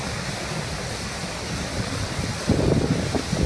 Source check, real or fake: real